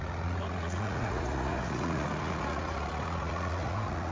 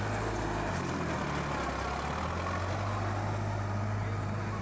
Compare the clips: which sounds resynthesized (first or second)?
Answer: first